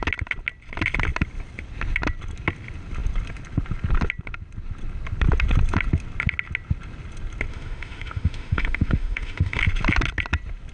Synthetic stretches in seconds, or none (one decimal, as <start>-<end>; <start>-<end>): 7.5-9.6